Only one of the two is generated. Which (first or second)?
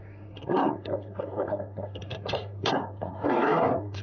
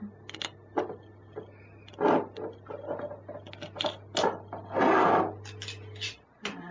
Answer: first